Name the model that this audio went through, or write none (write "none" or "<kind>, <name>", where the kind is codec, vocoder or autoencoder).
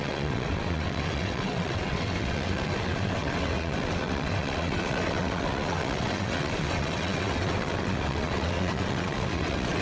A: vocoder, WaveNeXt